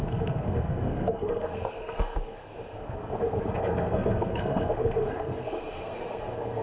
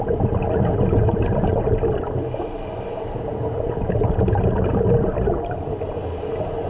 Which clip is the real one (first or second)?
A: second